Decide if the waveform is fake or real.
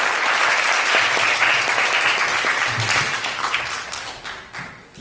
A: real